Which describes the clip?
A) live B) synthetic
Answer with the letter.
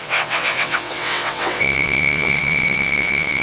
B